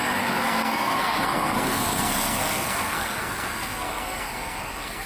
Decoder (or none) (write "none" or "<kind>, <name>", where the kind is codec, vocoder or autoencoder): codec, SNAC